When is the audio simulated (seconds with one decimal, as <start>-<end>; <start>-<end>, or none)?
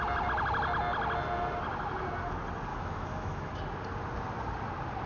2.7-3.5